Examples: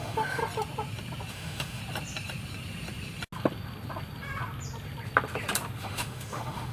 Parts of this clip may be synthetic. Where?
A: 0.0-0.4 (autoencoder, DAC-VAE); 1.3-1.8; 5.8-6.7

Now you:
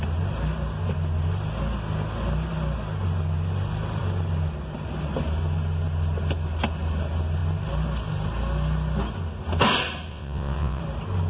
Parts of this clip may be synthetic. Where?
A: 10.1-10.8 (vocoder, WaveNeXt)

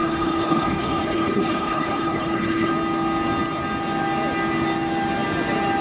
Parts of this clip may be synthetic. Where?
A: 0.0-2.7 (codec, HILCodec)

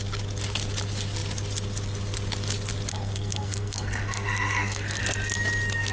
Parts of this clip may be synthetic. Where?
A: 2.9-5.0 (codec, SNAC)

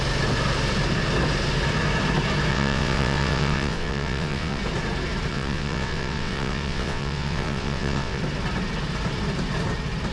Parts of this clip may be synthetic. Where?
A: 2.5-4.6 (vocoder, WaveNeXt); 5.3-8.2

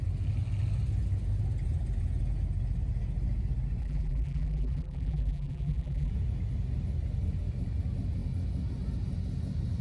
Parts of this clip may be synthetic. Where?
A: 3.8-6.1 (vocoder, BigVGAN v2)

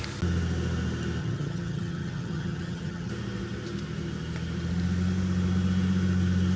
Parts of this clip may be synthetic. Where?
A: 1.2-3.1 (vocoder, HiFi-GAN)

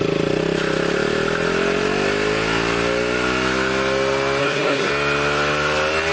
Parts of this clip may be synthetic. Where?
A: 4.4-4.9 (codec, SNAC)